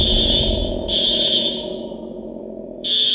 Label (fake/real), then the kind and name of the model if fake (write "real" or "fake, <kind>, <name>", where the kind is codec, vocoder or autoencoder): fake, autoencoder, DAC-VAE